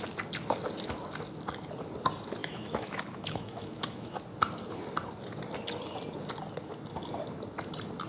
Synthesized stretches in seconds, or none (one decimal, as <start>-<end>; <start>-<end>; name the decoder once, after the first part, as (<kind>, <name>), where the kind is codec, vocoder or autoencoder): 2.4-4.2 (autoencoder, DAC-VAE)